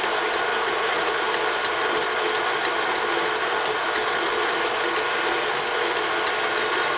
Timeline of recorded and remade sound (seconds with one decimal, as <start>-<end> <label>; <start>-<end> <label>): 0.0-0.5 recorded; 0.5-1.2 remade; 1.2-7.0 recorded